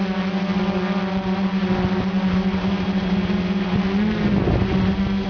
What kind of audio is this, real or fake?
real